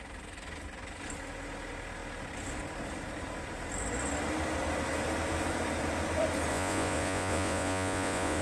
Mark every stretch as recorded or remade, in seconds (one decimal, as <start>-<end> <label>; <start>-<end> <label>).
0.0-6.5 recorded; 6.5-8.4 remade